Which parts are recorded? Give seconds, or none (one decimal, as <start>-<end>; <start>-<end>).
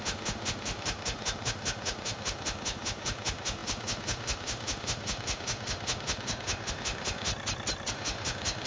7.3-7.9